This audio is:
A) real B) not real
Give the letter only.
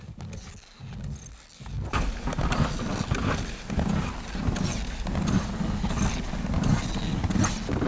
A